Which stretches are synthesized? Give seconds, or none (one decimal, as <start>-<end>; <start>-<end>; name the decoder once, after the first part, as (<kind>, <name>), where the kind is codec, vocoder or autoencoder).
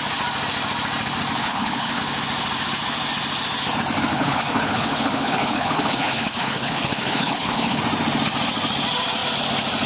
1.4-2.0 (codec, HILCodec); 4.1-7.8